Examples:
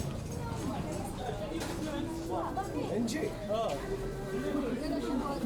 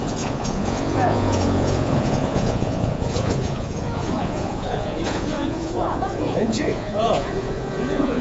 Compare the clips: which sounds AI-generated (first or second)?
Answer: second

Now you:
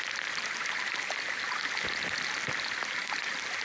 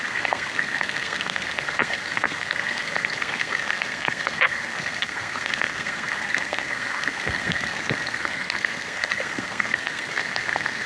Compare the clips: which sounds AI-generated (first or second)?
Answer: second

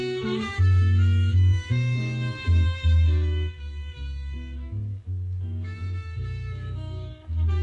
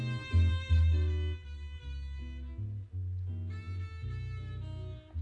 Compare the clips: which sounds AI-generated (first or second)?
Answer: first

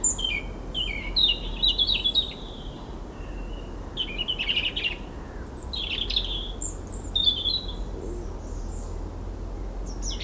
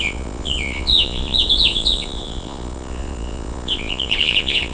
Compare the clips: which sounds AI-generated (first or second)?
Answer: second